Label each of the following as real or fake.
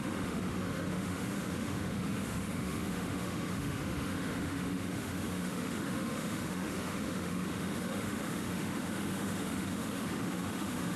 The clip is fake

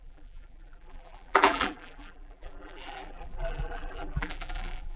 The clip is fake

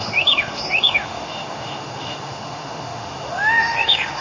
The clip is fake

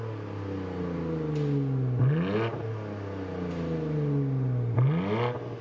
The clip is real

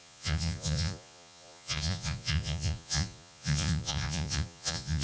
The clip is fake